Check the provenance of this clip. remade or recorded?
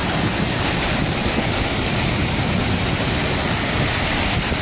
recorded